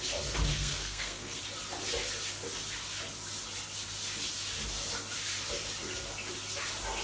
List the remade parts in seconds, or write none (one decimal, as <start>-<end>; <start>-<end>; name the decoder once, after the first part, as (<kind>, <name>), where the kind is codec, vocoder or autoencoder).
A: 0.5-1.4 (codec, SNAC)